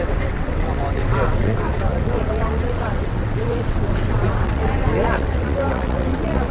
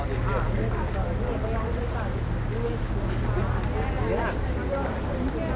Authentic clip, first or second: second